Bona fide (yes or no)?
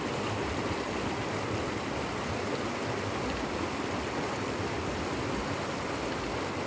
yes